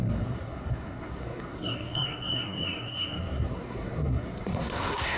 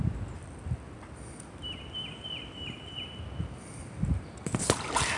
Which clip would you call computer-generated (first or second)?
first